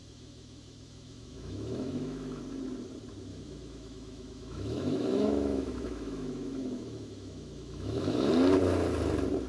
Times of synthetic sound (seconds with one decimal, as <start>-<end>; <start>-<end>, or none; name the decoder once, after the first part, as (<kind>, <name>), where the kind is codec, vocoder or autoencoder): 0.0-2.4 (autoencoder, DAC-VAE); 3.3-8.3